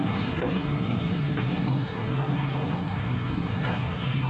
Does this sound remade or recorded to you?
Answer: remade